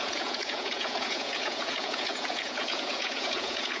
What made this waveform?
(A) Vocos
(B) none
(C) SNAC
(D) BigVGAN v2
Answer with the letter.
A